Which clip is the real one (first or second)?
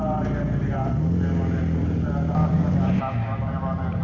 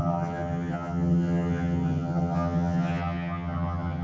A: first